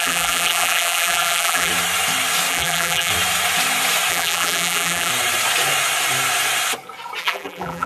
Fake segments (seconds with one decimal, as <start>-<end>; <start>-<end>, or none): 0.0-1.7; 2.5-3.1; 4.1-5.1; 7.2-7.9